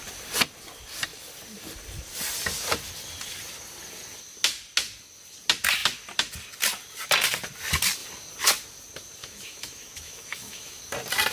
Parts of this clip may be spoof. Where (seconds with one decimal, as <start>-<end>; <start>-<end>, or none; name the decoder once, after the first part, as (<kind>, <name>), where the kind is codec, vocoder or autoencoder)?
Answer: 9.2-10.8 (autoencoder, DAC-VAE)